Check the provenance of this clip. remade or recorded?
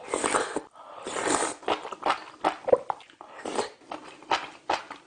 recorded